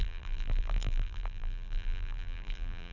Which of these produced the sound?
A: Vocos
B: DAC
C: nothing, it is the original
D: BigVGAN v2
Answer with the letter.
D